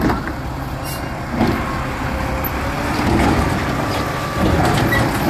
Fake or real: real